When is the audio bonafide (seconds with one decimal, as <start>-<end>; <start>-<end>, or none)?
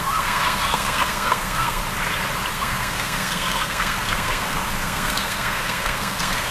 1.8-2.5